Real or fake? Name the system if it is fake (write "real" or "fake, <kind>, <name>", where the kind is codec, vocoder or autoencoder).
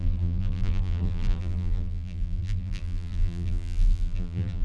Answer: fake, vocoder, BigVGAN v2